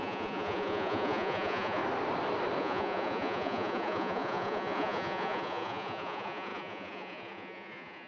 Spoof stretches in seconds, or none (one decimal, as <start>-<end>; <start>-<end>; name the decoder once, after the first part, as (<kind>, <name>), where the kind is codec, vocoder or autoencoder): 0.0-1.8 (vocoder, Vocos); 2.6-8.1